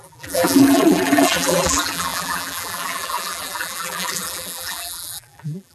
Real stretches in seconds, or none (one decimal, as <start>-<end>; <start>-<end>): none